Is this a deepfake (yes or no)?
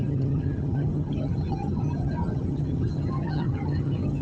yes